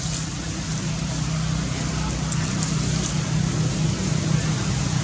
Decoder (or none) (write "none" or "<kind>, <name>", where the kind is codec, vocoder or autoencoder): none